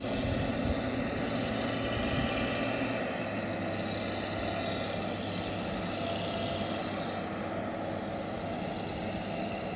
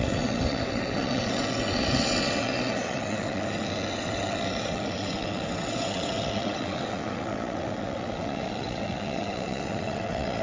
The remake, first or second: second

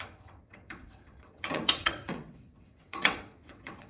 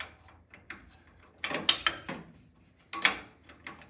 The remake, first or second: first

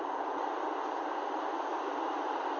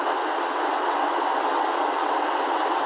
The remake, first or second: second